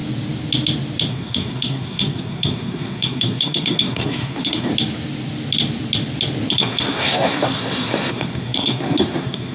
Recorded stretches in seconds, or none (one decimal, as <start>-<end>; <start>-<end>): 0.0-1.1; 4.7-6.5